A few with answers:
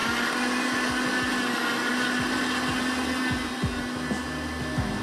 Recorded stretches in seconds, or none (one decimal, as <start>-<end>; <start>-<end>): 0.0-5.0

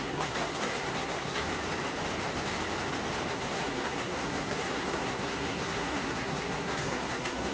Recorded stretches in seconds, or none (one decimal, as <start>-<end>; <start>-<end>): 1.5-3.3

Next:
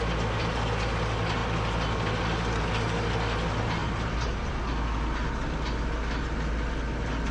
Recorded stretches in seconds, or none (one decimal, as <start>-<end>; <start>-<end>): 0.0-3.8; 4.5-7.3

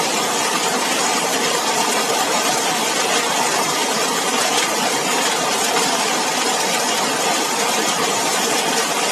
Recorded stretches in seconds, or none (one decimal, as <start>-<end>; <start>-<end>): 0.0-0.9; 2.5-9.1

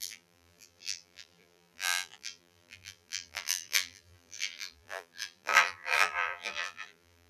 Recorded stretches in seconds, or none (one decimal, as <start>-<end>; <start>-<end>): none

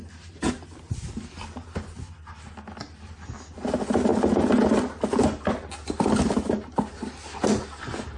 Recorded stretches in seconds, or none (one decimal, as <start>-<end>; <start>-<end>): 0.0-8.2

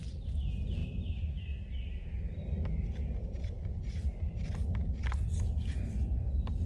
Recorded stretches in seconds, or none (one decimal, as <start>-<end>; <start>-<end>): 0.0-6.7

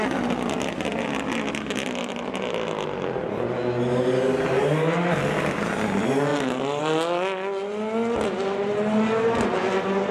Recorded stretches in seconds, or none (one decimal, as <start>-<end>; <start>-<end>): 0.0-10.1